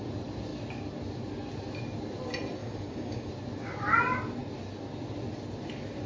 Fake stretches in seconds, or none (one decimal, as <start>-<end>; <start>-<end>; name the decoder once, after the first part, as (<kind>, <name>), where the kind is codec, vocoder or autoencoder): 2.6-3.3 (codec, DAC)